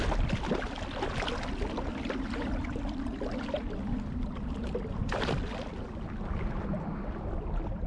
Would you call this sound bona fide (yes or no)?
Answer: yes